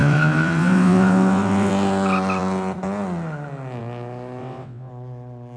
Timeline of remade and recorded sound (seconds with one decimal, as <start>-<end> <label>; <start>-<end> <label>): 0.0-1.7 remade; 1.7-4.4 recorded; 4.4-4.9 remade; 4.9-5.6 recorded